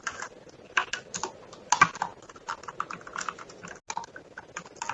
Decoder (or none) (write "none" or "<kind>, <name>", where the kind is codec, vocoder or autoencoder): none